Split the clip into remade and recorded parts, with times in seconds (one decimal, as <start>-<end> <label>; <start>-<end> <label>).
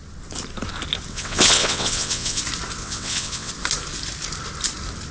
0.0-1.1 recorded; 1.1-2.4 remade; 2.4-2.8 recorded; 2.8-3.5 remade; 3.5-5.1 recorded